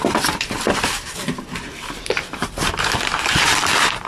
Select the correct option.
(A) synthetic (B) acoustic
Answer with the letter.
A